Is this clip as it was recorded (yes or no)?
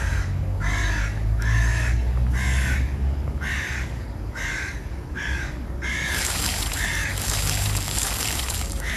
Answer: no